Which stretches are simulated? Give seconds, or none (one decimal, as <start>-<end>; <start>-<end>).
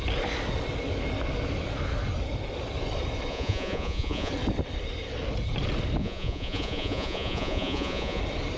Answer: 3.3-4.3; 6.0-8.2